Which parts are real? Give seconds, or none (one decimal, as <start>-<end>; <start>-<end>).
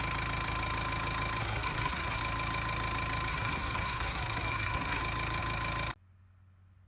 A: 0.0-1.4; 2.2-3.3; 5.0-6.9